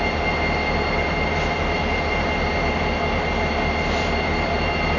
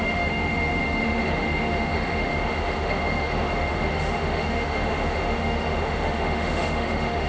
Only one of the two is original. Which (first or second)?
first